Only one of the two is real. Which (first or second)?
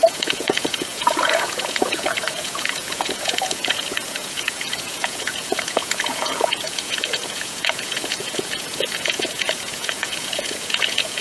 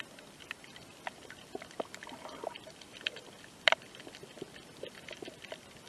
second